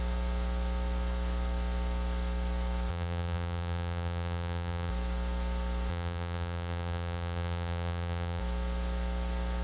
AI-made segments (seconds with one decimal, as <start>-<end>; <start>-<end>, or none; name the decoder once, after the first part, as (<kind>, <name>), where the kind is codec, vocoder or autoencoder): 2.9-4.9 (vocoder, BigVGAN v2); 5.9-8.4